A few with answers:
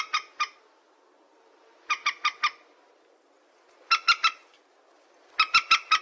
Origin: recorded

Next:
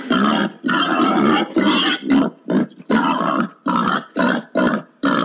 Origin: recorded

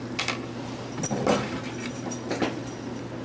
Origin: recorded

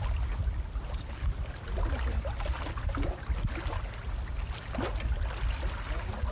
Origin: recorded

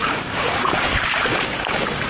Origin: remade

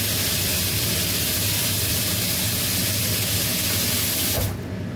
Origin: recorded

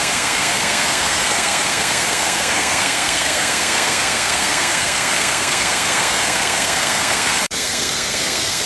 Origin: remade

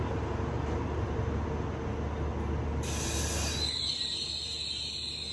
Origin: recorded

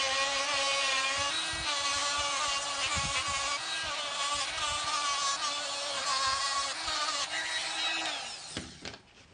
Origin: recorded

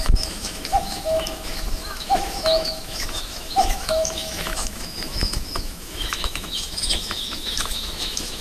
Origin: remade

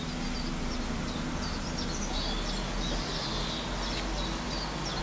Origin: recorded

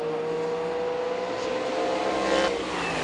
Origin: recorded